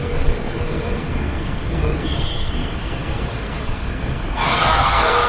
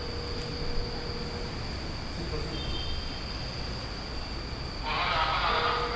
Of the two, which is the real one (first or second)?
second